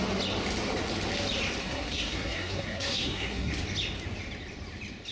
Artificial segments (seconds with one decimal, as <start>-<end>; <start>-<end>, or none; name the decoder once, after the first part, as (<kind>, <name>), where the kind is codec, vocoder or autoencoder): 1.6-3.5 (codec, SNAC)